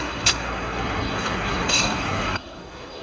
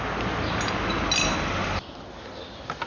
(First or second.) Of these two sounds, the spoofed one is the first